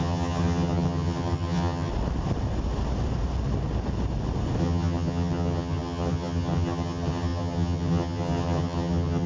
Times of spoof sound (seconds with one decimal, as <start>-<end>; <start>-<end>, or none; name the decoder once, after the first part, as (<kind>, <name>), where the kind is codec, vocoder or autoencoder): 0.0-1.9 (vocoder, HiFi-GAN); 4.6-9.3